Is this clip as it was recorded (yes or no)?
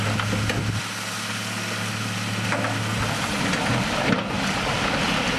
yes